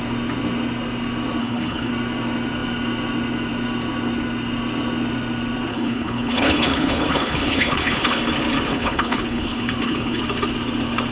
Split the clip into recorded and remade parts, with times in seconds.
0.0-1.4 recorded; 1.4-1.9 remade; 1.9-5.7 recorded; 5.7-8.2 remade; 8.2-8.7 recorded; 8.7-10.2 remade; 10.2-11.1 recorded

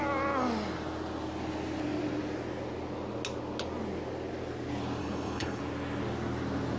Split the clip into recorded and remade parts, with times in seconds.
0.0-5.0 recorded; 5.0-5.6 remade; 5.6-6.8 recorded

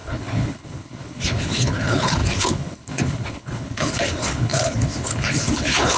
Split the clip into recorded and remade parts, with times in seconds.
0.0-6.0 remade

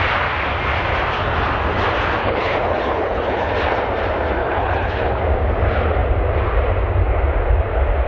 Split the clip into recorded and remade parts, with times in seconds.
0.0-2.2 recorded; 2.2-3.5 remade; 3.5-4.4 recorded; 4.4-5.2 remade; 5.2-8.1 recorded

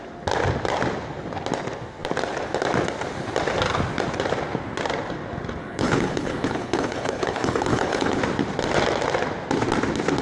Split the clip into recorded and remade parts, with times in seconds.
0.0-5.6 recorded; 5.6-8.2 remade; 8.2-10.2 recorded

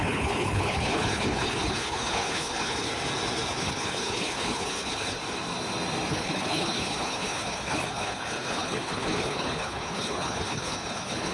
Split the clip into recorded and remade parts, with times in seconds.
0.0-2.9 remade; 2.9-3.5 recorded; 3.5-5.2 remade; 5.2-6.1 recorded; 6.1-11.3 remade

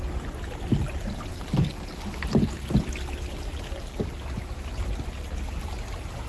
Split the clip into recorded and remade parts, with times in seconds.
0.0-6.3 recorded